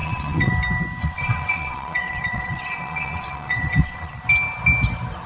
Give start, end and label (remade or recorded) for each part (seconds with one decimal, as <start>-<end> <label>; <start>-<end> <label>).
0.0-0.5 remade; 0.5-1.0 recorded; 1.0-4.2 remade; 4.2-5.3 recorded